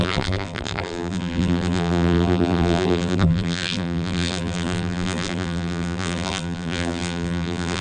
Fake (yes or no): yes